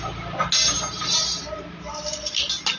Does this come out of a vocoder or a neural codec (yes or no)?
no